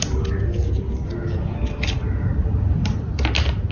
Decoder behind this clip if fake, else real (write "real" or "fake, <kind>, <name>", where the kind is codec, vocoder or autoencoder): real